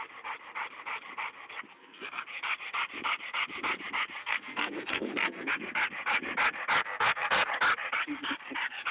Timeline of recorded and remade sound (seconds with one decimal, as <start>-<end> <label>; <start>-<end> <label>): 0.0-1.7 recorded; 1.7-2.2 remade; 2.2-4.2 recorded; 4.2-5.5 remade; 5.5-6.8 recorded; 6.8-7.5 remade; 7.5-8.9 recorded